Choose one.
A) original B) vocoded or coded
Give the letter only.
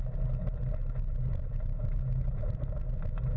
A